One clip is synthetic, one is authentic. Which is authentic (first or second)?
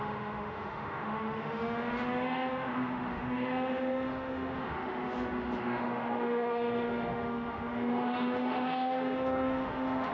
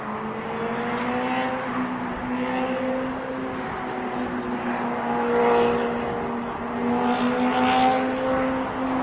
second